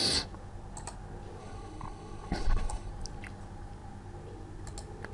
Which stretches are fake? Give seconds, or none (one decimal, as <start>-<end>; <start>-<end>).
1.4-2.9